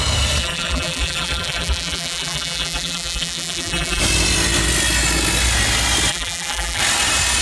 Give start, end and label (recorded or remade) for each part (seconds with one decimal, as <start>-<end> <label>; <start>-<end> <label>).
0.0-0.4 recorded; 0.4-4.0 remade; 4.0-6.1 recorded; 6.1-6.8 remade; 6.8-7.4 recorded